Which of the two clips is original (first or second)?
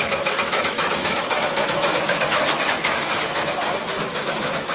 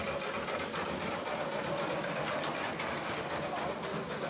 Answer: second